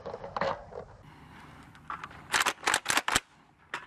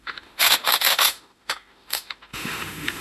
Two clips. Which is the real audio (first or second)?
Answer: first